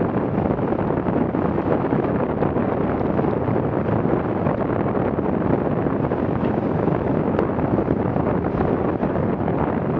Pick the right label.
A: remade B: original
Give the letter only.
B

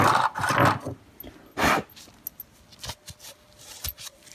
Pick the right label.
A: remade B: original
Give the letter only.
B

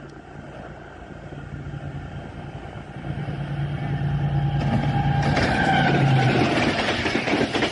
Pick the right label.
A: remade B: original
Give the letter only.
B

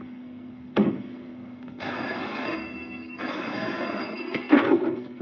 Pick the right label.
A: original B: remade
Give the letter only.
B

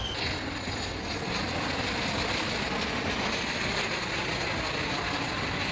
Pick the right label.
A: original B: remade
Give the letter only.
A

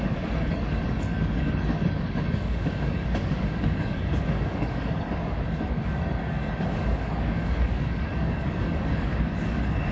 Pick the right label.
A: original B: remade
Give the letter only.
B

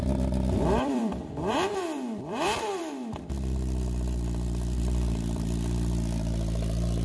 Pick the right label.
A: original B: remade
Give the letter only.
B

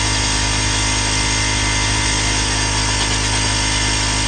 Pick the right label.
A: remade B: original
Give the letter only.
B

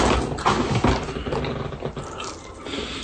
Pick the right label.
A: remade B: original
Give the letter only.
B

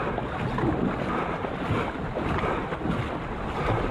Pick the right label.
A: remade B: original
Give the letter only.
B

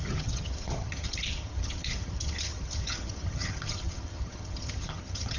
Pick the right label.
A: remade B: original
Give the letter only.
A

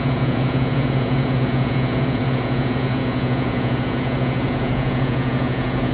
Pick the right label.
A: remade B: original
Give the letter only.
A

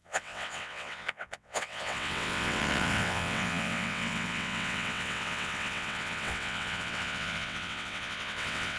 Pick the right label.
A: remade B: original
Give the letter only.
A